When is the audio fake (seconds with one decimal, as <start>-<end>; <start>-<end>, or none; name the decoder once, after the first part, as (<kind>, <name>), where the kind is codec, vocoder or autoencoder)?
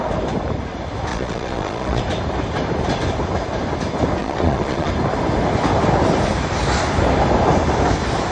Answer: 1.1-2.0 (vocoder, Vocos); 4.2-4.9